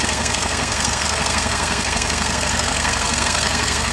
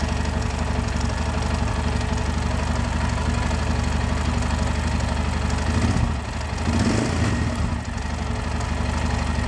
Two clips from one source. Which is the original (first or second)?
second